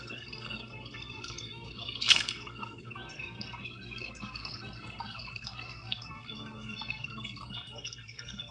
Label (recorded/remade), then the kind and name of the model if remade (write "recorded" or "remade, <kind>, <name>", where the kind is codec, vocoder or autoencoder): remade, codec, SNAC